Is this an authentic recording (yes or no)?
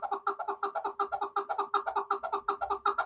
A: yes